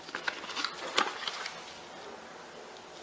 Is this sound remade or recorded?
recorded